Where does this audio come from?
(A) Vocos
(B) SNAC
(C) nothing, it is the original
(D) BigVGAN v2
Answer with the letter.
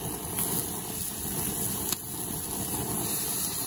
C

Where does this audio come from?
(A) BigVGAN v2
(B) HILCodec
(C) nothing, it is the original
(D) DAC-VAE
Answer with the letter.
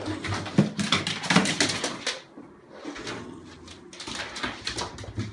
C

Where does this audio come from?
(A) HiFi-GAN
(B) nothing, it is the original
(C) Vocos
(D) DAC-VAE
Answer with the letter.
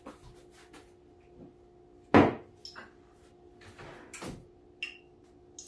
B